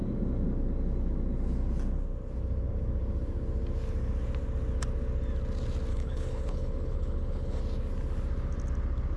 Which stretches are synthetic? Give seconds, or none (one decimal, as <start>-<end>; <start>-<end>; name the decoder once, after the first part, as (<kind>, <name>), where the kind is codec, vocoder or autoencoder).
5.9-7.6 (codec, HILCodec)